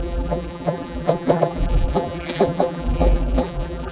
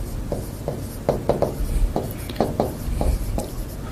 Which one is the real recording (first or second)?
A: second